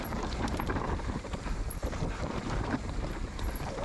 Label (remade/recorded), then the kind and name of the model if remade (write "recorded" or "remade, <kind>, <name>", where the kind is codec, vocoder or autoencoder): remade, vocoder, BigVGAN v2